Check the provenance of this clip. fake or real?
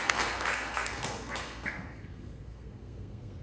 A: fake